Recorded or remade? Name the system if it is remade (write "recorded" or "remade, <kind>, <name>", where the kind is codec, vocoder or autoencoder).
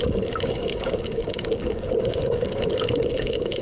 remade, codec, DAC